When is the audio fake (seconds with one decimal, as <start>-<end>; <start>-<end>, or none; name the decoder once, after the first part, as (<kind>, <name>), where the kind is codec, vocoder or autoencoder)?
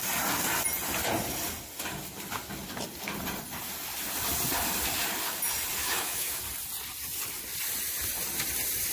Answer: 5.8-6.4 (autoencoder, DAC-VAE)